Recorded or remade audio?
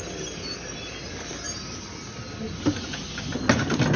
recorded